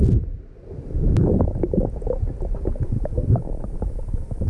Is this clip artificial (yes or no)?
no